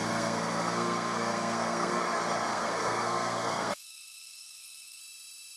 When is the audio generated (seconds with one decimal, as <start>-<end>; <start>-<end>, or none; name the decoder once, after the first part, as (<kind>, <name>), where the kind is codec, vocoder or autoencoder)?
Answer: 0.0-2.0 (codec, SNAC); 2.5-5.0